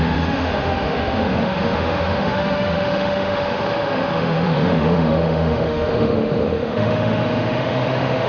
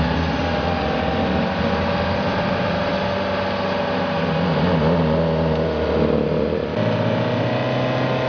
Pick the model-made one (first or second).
first